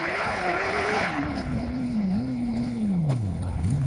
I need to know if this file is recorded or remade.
remade